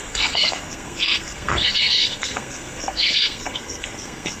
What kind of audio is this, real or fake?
fake